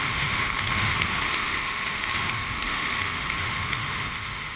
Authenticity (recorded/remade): remade